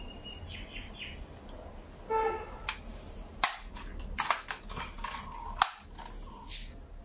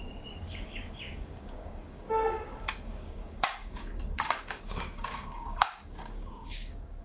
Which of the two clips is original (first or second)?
first